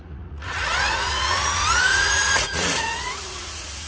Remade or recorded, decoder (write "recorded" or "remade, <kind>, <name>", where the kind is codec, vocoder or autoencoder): remade, vocoder, Vocos